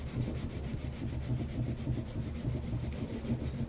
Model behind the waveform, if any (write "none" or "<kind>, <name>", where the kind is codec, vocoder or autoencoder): none